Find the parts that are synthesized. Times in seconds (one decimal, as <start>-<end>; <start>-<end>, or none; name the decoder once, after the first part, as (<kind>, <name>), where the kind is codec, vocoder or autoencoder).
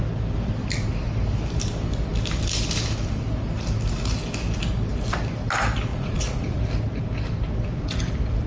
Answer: 5.9-6.6 (vocoder, Vocos)